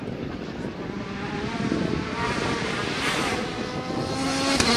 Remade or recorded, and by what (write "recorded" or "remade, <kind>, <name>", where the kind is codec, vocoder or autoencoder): recorded